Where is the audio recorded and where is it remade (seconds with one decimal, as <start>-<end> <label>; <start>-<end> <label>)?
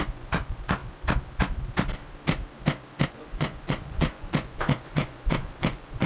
0.0-0.8 remade; 0.8-3.1 recorded; 3.1-6.1 remade